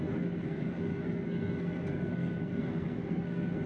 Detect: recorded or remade remade